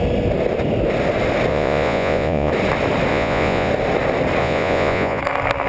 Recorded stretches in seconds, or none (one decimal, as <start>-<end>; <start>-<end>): 0.0-1.5; 2.5-3.1; 3.7-4.4; 5.2-5.7